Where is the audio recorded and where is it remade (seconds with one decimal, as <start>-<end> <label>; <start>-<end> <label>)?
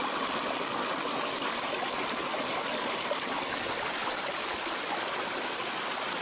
0.0-6.2 recorded